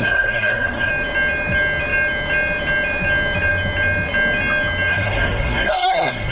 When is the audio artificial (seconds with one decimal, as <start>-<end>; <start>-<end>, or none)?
0.0-0.9; 4.9-6.3